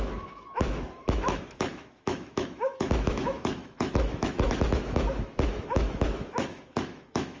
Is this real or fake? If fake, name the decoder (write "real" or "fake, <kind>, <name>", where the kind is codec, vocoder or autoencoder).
fake, autoencoder, DAC-VAE